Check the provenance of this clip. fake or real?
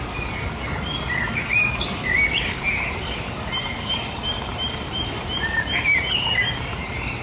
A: fake